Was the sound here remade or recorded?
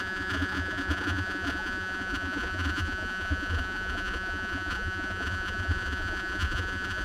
remade